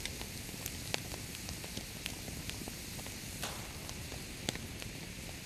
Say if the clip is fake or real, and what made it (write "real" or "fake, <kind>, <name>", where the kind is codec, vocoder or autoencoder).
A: real